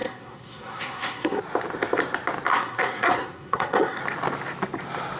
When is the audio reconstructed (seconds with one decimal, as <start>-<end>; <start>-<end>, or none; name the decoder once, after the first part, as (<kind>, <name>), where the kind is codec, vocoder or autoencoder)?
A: 0.0-1.4 (codec, SNAC); 2.5-4.0